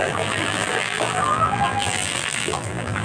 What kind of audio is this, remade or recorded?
remade